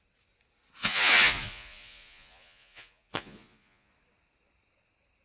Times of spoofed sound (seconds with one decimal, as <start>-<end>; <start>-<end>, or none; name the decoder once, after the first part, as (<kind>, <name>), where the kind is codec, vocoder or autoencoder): 0.8-3.9 (vocoder, Vocos)